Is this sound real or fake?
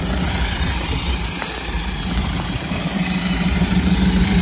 fake